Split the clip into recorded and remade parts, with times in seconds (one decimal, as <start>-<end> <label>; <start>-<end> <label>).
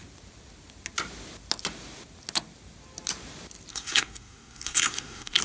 0.0-3.7 recorded; 3.7-5.4 remade